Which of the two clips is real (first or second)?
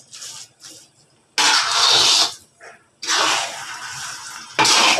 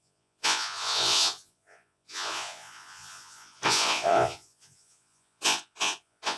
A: first